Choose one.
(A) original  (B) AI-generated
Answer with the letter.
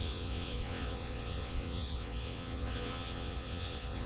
B